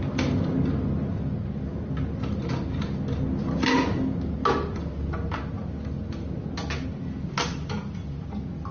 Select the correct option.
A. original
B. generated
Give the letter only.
A